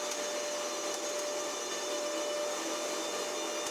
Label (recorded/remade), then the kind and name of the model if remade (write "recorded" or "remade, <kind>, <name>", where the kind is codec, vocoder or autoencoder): recorded